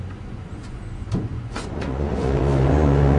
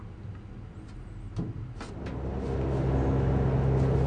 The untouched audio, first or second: second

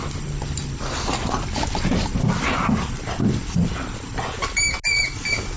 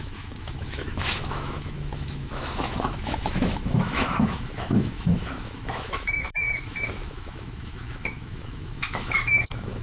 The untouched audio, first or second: first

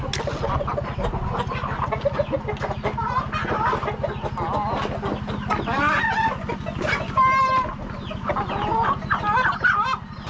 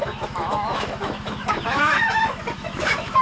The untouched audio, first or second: first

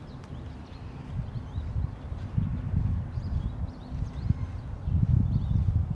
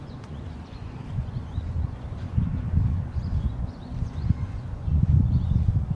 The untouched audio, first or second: first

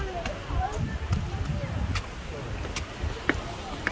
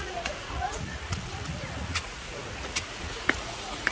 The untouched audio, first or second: first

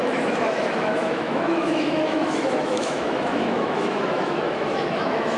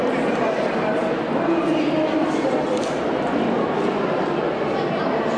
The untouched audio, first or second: second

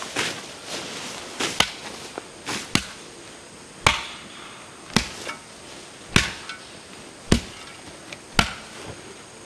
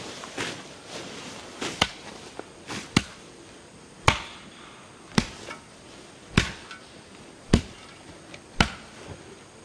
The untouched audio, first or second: first